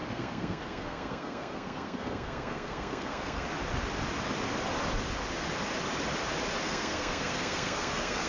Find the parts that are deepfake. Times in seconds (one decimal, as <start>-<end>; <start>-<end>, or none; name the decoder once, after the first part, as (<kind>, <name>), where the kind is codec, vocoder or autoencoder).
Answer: 0.0-3.5 (codec, SNAC); 6.6-8.3